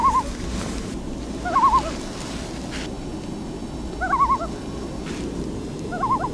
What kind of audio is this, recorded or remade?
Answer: recorded